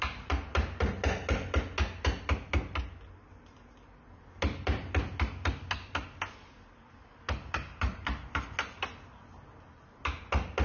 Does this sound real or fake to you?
real